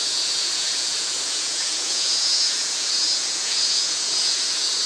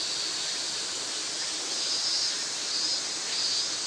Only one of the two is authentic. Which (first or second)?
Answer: second